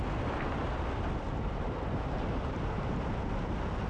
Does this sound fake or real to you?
real